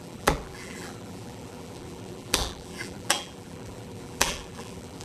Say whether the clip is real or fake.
fake